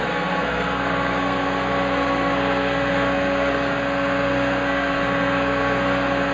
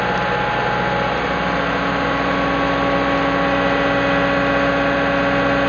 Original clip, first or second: second